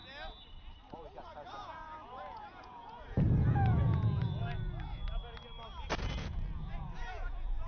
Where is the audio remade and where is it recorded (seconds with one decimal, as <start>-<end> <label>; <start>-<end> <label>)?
0.0-0.9 recorded; 0.9-4.4 remade; 4.4-6.0 recorded; 6.0-7.7 remade